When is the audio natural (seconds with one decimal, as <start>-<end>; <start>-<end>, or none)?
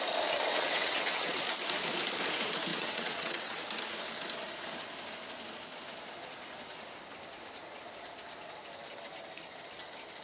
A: 0.0-0.5; 1.4-2.7; 3.6-10.2